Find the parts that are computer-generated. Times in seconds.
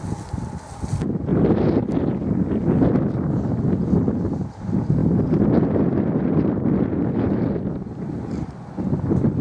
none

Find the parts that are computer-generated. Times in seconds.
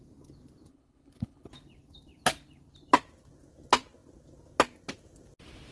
0.7-1.5